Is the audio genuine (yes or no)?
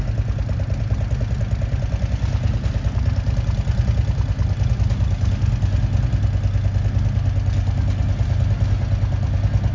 yes